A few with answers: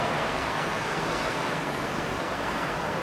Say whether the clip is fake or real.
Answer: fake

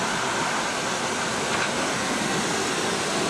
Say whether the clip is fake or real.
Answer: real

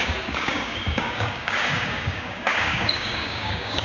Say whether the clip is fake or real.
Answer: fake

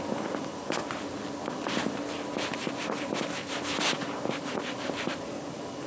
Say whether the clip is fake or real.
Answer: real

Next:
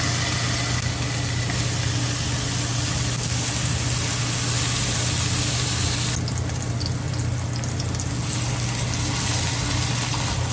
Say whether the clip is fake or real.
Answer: real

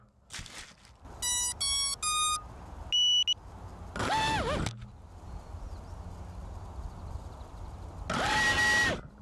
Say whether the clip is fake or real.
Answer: real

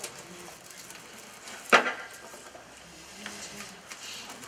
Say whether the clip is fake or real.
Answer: real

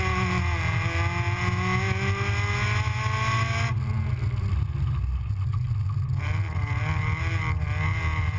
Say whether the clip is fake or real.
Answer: real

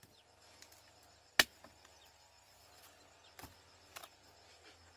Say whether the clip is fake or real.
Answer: real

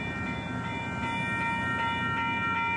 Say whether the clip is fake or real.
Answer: real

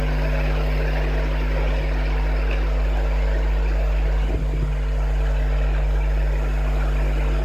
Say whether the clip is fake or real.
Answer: real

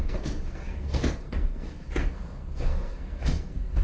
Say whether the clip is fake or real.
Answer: fake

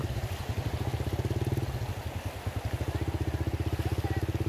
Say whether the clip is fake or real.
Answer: real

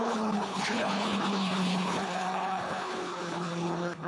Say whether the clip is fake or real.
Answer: fake